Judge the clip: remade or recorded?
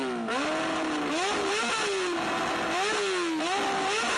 recorded